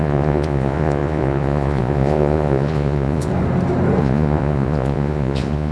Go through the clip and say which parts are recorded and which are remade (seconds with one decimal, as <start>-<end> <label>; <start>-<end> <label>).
0.0-3.3 remade; 3.3-4.0 recorded; 4.0-5.7 remade